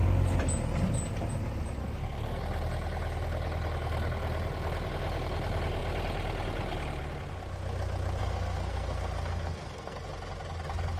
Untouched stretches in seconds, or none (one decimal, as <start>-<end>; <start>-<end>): 0.0-1.8; 2.4-8.2; 10.0-11.0